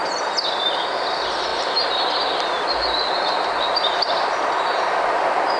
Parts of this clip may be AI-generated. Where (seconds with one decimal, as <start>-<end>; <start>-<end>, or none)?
none